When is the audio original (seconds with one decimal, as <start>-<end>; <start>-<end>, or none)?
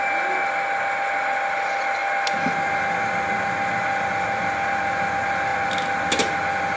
0.0-6.8